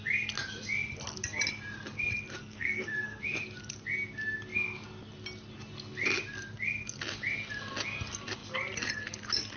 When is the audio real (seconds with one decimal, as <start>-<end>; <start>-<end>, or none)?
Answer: 0.0-2.4; 3.2-9.6